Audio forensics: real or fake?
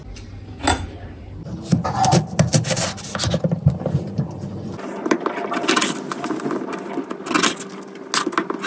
real